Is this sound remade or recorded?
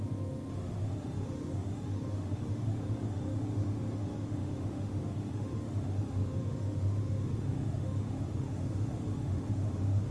remade